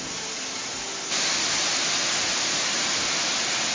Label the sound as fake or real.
real